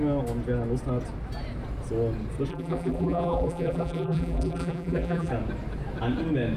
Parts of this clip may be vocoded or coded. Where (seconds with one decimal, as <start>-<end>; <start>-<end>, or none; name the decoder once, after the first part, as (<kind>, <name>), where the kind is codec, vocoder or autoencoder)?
2.5-5.3 (vocoder, BigVGAN v2)

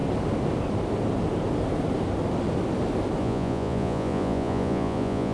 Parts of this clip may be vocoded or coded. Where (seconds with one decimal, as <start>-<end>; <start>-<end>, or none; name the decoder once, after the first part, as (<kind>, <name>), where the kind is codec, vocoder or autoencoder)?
3.2-5.3 (vocoder, Vocos)

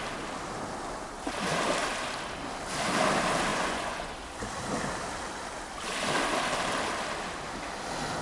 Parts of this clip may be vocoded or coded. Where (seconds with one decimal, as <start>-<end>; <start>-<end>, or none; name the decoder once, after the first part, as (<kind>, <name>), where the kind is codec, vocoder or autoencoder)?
3.5-4.1 (vocoder, Vocos)

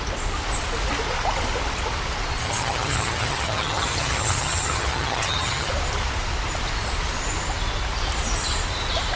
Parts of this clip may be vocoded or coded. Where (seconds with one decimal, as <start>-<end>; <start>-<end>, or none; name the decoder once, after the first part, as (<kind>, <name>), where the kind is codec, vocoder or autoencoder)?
2.4-5.7 (vocoder, HiFi-GAN)

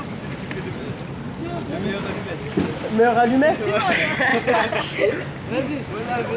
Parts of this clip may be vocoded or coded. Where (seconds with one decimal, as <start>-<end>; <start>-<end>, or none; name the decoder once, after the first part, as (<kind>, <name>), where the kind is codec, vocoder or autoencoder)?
none